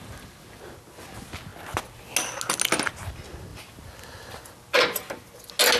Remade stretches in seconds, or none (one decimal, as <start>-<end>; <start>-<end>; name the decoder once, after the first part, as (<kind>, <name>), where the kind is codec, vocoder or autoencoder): none